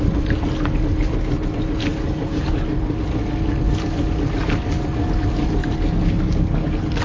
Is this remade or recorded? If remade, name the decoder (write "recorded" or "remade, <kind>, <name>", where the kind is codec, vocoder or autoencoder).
recorded